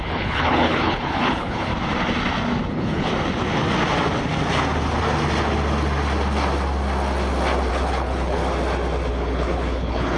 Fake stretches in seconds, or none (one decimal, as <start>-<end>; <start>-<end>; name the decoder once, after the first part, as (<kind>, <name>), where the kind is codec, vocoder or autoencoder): 0.0-1.7 (codec, HILCodec); 2.7-3.1; 7.7-8.4; 9.1-10.2